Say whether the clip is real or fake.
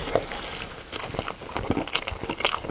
real